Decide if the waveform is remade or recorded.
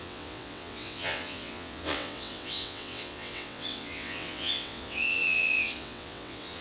remade